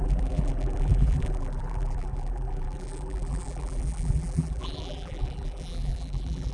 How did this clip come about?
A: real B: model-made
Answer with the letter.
B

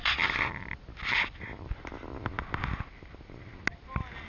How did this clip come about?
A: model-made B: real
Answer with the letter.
B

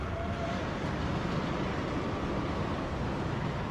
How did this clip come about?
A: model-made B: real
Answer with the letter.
B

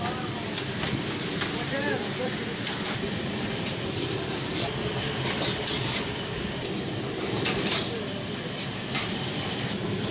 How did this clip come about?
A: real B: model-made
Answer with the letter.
B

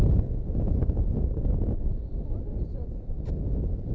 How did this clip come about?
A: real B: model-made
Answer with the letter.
A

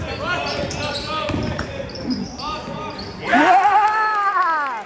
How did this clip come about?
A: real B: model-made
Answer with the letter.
B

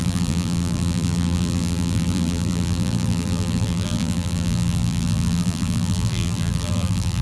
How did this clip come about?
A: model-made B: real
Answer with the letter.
A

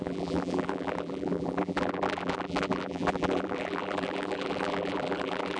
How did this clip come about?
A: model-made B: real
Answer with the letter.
A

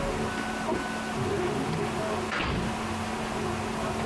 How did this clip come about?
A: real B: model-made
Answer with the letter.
A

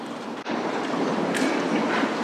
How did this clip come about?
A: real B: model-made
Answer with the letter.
B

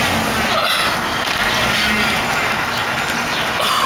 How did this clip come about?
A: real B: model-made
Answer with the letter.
A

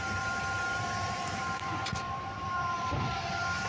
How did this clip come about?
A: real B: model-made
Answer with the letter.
B